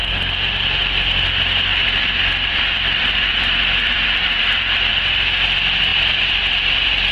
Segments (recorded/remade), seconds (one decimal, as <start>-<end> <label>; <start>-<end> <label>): 0.0-1.7 recorded; 1.7-4.9 remade; 4.9-5.9 recorded; 5.9-7.1 remade